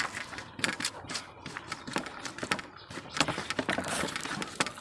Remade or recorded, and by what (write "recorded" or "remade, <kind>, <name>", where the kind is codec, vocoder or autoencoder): recorded